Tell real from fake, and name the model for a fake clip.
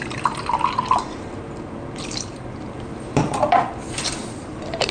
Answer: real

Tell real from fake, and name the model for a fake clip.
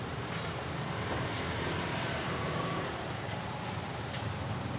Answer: fake, vocoder, BigVGAN v2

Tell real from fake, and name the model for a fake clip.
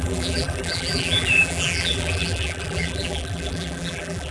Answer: fake, vocoder, BigVGAN v2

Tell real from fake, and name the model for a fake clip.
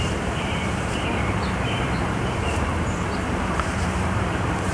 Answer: fake, vocoder, BigVGAN v2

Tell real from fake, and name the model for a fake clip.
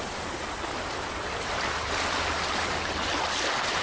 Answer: fake, vocoder, BigVGAN v2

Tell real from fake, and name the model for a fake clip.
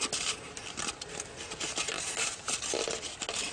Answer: real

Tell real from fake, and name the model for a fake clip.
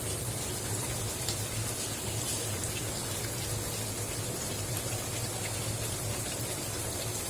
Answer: real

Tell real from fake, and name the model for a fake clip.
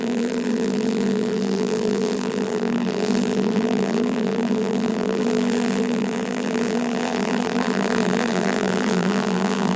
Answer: fake, vocoder, BigVGAN v2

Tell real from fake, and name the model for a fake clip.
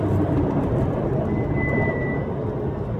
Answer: real